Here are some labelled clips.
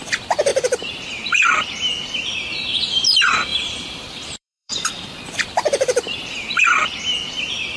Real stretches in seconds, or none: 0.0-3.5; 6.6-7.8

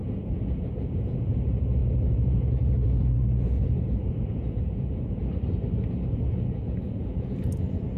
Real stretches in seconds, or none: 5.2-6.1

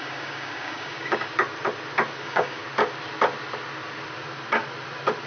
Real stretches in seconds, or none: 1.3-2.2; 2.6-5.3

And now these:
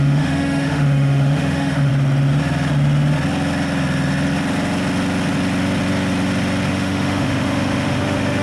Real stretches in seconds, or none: 1.9-6.7

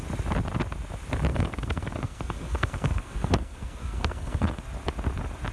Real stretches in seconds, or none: 0.0-1.3; 4.6-5.5

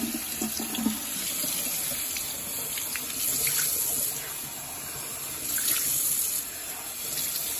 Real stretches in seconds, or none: 0.0-7.6

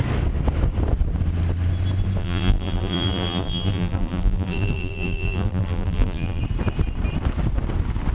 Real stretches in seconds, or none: 0.0-2.2; 6.4-8.1

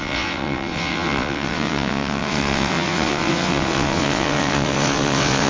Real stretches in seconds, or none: none